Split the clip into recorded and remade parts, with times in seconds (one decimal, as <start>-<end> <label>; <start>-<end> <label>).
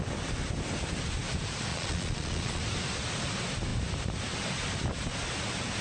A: 0.0-1.7 recorded; 1.7-2.6 remade; 2.6-5.8 recorded